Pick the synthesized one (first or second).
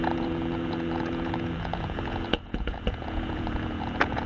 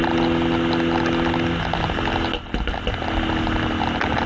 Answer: first